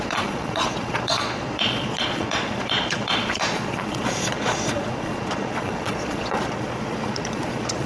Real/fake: fake